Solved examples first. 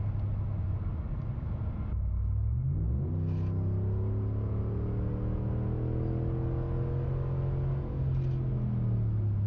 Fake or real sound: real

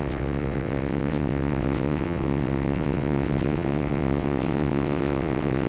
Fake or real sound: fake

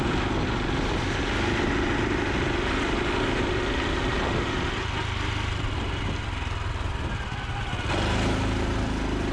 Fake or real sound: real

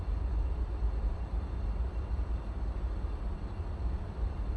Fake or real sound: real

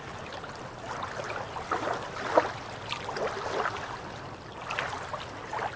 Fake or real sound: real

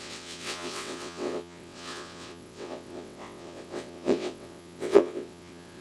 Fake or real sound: fake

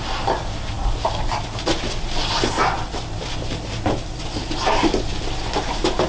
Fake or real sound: real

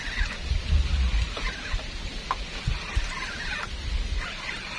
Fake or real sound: real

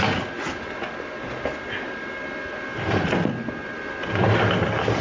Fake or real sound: real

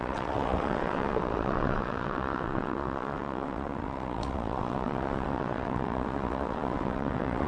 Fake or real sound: fake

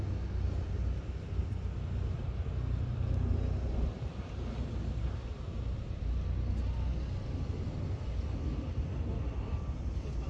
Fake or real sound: real